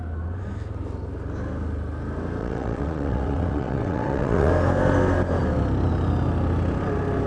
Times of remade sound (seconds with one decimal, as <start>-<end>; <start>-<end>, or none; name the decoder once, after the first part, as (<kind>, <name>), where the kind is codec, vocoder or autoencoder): 2.4-4.5 (vocoder, WaveNeXt)

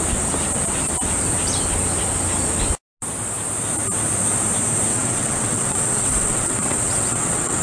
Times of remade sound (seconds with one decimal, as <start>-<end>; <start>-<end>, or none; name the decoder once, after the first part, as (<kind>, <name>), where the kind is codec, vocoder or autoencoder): 4.9-7.6 (vocoder, WaveNeXt)